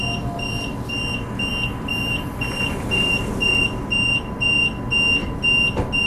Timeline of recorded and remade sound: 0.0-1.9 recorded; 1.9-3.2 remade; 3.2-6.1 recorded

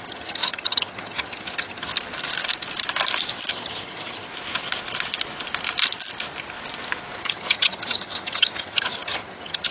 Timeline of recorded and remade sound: 0.0-1.9 remade; 1.9-3.5 recorded; 3.5-4.3 remade; 4.3-7.2 recorded; 7.2-9.7 remade

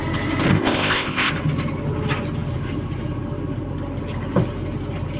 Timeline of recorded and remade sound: 0.0-0.5 recorded; 0.5-1.3 remade; 1.3-5.2 recorded

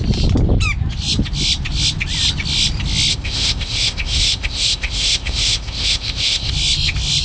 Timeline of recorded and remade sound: 0.0-3.1 recorded; 3.1-6.5 remade; 6.5-7.2 recorded

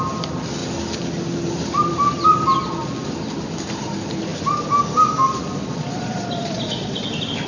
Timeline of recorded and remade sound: 0.0-5.6 recorded; 5.6-7.1 remade; 7.1-7.5 recorded

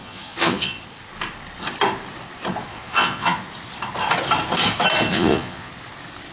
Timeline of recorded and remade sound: 0.0-0.8 remade; 0.8-2.7 recorded; 2.7-3.4 remade; 3.4-5.1 recorded; 5.1-5.7 remade; 5.7-6.3 recorded